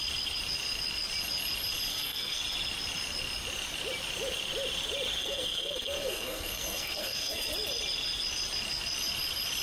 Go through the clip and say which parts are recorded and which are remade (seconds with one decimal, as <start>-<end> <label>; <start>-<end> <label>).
0.0-1.9 recorded; 1.9-2.4 remade; 2.4-5.2 recorded; 5.2-7.5 remade; 7.5-9.6 recorded

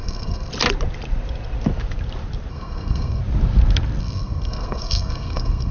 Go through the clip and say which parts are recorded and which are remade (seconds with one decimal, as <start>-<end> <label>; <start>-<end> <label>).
0.0-0.5 remade; 0.5-2.5 recorded; 2.5-3.2 remade; 3.2-4.0 recorded; 4.0-5.7 remade

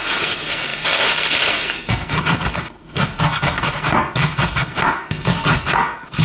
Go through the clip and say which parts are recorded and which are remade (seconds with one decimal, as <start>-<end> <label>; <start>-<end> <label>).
0.0-6.2 remade

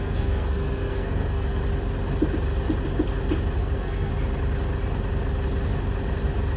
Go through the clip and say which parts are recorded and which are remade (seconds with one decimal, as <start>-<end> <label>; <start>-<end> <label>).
0.0-1.6 remade; 1.6-3.6 recorded; 3.6-4.1 remade; 4.1-6.6 recorded

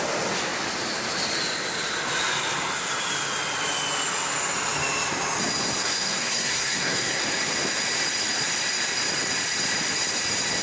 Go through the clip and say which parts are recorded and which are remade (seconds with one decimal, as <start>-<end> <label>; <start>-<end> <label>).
0.0-5.8 recorded; 5.8-7.2 remade; 7.2-10.6 recorded